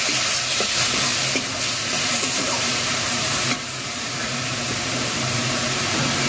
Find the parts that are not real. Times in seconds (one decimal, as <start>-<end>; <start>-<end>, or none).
0.0-6.3